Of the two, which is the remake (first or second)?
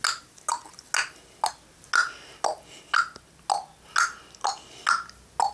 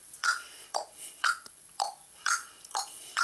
second